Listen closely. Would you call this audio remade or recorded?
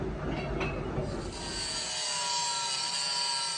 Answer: recorded